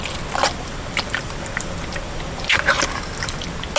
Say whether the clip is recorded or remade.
recorded